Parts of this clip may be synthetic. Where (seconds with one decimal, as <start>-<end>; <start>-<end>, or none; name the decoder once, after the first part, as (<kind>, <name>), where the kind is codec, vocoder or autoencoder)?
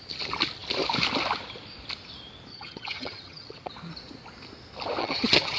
2.5-3.7 (vocoder, HiFi-GAN); 5.0-5.6